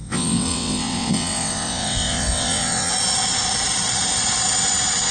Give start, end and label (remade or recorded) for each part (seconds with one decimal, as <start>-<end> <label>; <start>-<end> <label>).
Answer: 0.0-2.9 remade; 2.9-5.1 recorded